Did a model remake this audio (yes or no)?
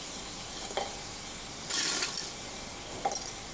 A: no